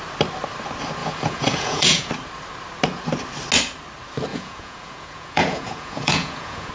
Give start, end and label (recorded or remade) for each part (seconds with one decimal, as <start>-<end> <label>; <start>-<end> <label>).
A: 0.0-1.0 recorded; 1.0-2.1 remade; 2.1-4.3 recorded; 4.3-6.7 remade